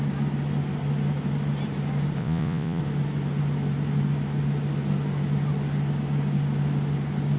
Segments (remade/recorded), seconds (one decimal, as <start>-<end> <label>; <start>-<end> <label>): 0.0-2.2 recorded; 2.2-2.8 remade; 2.8-7.4 recorded